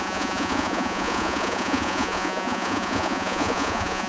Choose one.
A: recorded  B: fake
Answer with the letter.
B